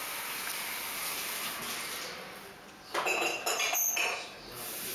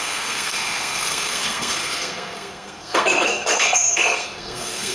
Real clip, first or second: first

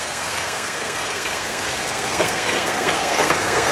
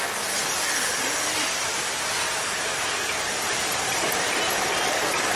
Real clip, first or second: second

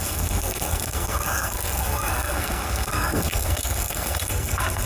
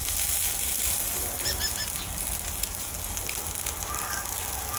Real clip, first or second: second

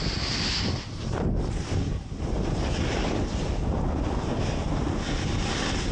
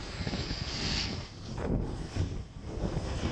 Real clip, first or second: first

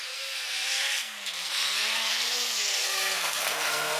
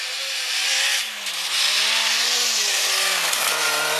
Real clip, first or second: second